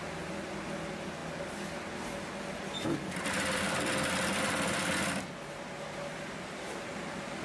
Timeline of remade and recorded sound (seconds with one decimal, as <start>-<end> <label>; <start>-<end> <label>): 0.0-6.1 recorded; 6.1-7.4 remade